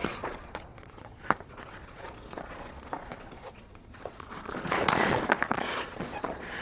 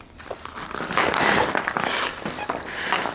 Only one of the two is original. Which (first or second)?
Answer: second